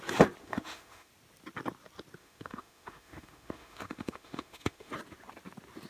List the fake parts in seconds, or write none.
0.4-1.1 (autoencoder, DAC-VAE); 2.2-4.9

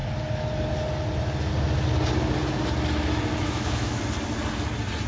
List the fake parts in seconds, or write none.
3.3-4.0 (autoencoder, DAC-VAE)

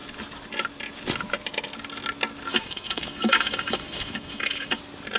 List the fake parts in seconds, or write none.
2.5-4.8 (autoencoder, DAC-VAE)

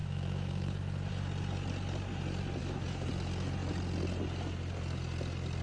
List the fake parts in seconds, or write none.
0.0-1.1 (autoencoder, DAC-VAE); 2.6-3.1

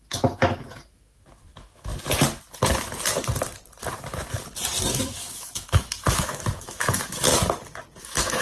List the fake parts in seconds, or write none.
0.0-1.9 (autoencoder, DAC-VAE); 4.9-7.3; 8.0-8.4

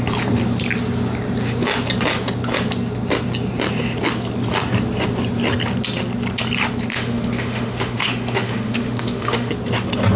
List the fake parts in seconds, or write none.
6.9-9.5 (autoencoder, DAC-VAE)